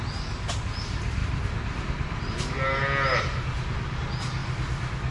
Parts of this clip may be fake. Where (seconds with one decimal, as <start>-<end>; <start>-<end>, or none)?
none